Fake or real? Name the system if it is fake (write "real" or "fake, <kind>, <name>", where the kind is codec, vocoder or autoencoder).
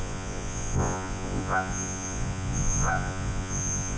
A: fake, vocoder, Vocos